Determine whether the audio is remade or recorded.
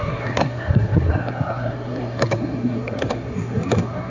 remade